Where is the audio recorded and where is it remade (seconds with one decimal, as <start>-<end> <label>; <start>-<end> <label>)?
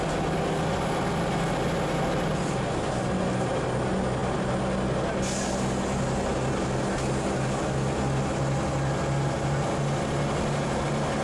0.0-11.2 recorded